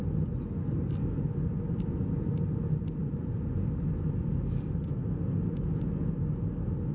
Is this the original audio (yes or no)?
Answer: yes